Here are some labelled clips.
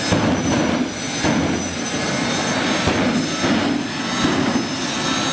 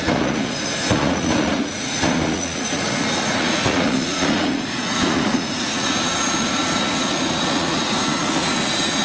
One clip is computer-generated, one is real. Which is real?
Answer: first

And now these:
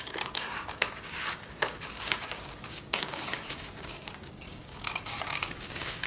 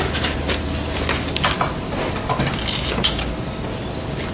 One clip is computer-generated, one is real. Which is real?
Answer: second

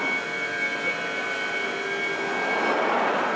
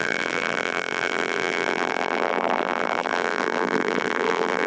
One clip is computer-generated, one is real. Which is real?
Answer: first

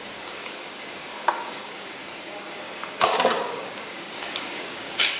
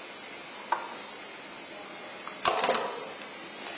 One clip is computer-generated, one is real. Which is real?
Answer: second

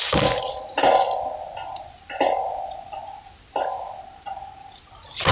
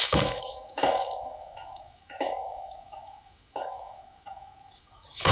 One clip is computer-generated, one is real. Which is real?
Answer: first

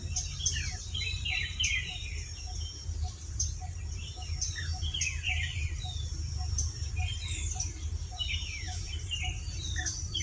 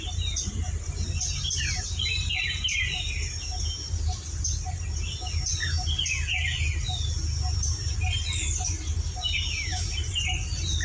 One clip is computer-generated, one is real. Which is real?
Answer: second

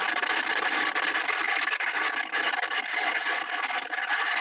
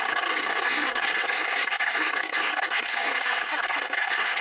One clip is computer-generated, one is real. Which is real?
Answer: first